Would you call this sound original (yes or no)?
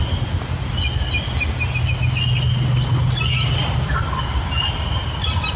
yes